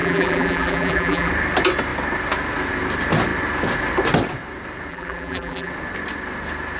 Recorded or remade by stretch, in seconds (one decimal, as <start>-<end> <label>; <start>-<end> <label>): 0.0-1.3 remade; 1.3-4.9 recorded; 4.9-5.7 remade; 5.7-6.8 recorded